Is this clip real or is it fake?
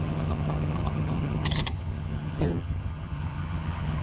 fake